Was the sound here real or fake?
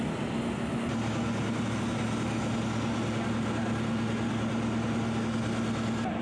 real